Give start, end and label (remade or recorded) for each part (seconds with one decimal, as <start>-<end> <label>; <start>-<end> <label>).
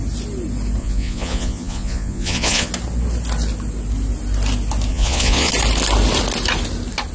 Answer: 0.0-0.8 recorded; 0.8-2.7 remade; 2.7-4.9 recorded; 4.9-5.5 remade; 5.5-7.1 recorded